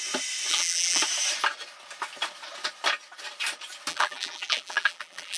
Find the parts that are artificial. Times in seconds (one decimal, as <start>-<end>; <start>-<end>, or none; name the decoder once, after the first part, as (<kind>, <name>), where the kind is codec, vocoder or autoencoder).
0.5-1.0 (vocoder, BigVGAN v2); 3.9-5.4